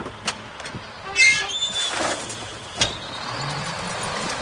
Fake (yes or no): no